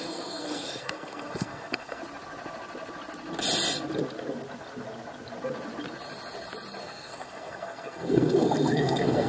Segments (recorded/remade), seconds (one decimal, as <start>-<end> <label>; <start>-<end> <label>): 0.0-2.0 remade; 2.0-6.8 recorded; 6.8-9.3 remade